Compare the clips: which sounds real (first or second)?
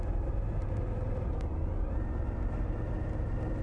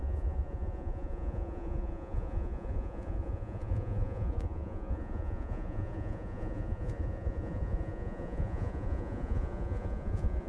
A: first